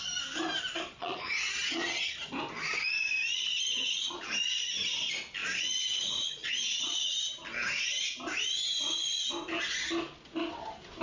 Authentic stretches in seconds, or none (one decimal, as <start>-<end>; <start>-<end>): 0.0-1.0; 2.1-3.7; 4.2-5.4; 7.1-11.0